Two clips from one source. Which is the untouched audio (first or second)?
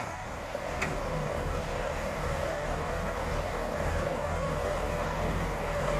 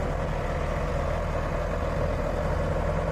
second